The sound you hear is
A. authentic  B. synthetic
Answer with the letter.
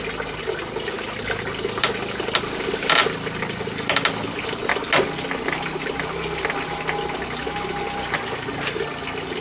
A